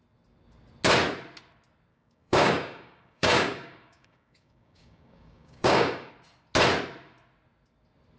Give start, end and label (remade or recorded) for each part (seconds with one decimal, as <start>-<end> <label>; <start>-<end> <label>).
0.0-1.9 recorded; 1.9-6.1 remade; 6.1-8.2 recorded

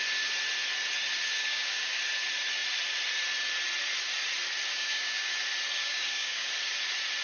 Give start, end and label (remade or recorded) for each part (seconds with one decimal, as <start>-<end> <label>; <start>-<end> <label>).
0.0-1.4 recorded; 1.4-2.0 remade; 2.0-4.7 recorded; 4.7-5.3 remade; 5.3-5.8 recorded; 5.8-6.5 remade; 6.5-7.2 recorded

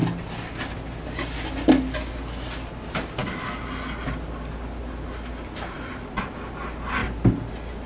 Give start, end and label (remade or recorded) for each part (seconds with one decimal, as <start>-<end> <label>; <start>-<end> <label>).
0.0-7.9 recorded

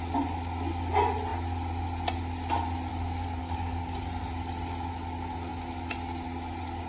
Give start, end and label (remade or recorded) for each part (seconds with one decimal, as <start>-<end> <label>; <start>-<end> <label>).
0.0-3.4 recorded; 3.4-4.0 remade; 4.0-6.9 recorded

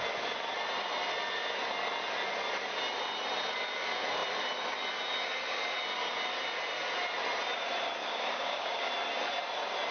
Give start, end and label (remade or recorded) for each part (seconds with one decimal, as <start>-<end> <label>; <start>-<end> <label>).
0.0-8.0 recorded; 8.0-8.9 remade; 8.9-9.9 recorded

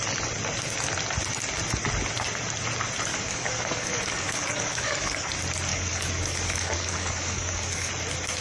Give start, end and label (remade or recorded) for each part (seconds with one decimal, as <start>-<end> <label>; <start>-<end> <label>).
0.0-3.1 recorded; 3.1-5.3 remade; 5.3-5.7 recorded; 5.7-7.9 remade; 7.9-8.4 recorded